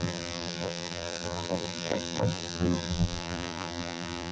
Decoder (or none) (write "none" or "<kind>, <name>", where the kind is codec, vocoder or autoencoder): vocoder, BigVGAN v2